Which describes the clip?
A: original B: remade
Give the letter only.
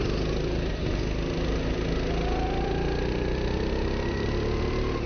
A